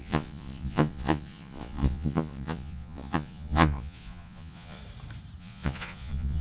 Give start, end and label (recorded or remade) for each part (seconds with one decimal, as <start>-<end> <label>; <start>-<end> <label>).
0.0-4.8 remade; 4.8-5.4 recorded; 5.4-6.4 remade